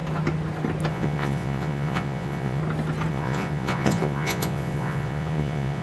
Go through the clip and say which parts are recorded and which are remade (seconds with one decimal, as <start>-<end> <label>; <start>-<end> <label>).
0.0-0.9 recorded; 0.9-2.6 remade; 2.6-3.1 recorded; 3.1-5.8 remade